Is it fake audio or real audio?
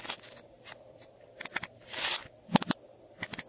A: real